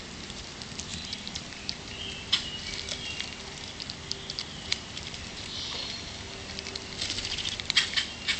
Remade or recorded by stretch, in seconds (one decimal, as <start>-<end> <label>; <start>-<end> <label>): 0.0-0.9 recorded; 0.9-1.9 remade; 1.9-4.7 recorded; 4.7-5.5 remade; 5.5-8.4 recorded